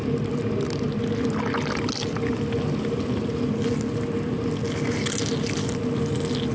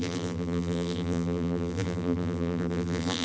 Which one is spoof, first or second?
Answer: second